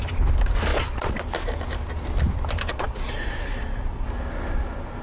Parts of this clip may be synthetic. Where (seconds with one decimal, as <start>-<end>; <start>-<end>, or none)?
0.7-1.2; 2.7-4.1